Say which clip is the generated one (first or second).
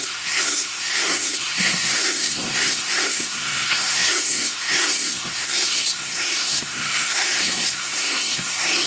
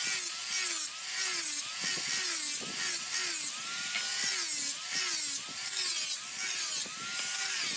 first